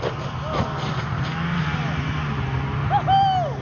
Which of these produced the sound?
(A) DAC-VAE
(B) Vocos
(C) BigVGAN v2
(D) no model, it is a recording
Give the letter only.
D